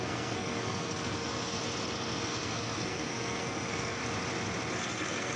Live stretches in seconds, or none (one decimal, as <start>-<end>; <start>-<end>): 1.6-2.2; 4.0-4.8